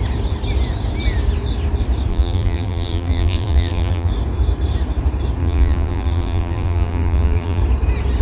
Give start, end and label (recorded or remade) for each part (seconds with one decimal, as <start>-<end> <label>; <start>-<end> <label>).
0.0-2.1 recorded; 2.1-4.1 remade; 4.1-5.4 recorded; 5.4-7.6 remade; 7.6-8.2 recorded